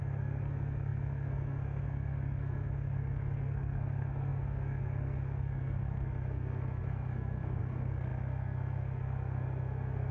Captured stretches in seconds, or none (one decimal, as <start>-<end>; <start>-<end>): none